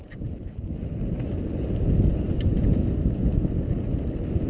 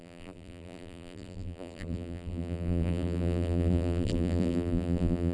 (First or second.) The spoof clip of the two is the second